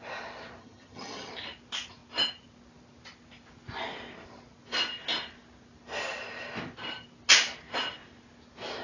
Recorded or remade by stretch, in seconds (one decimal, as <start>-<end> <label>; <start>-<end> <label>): 0.0-0.6 recorded; 0.6-1.3 remade; 1.3-8.8 recorded